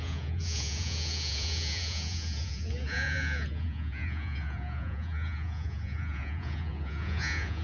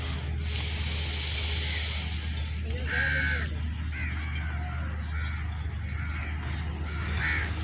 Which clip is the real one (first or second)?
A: second